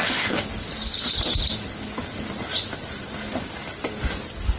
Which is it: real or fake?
real